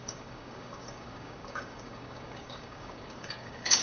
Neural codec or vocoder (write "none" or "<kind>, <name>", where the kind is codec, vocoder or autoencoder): codec, DAC